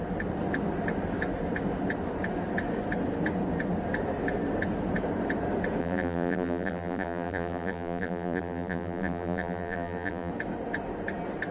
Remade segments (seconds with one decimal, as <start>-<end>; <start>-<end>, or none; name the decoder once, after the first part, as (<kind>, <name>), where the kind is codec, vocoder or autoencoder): 5.8-10.3 (vocoder, BigVGAN v2)

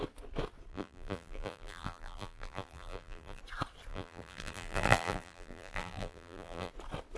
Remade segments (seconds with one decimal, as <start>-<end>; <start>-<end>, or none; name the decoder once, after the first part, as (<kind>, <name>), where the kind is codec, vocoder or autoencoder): 0.7-3.4 (vocoder, BigVGAN v2); 3.9-6.7

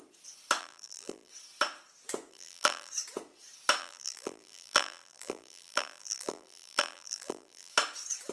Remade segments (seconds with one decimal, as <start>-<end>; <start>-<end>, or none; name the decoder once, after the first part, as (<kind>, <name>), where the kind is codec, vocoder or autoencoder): 0.6-1.3 (vocoder, BigVGAN v2); 2.3-2.9; 3.8-7.7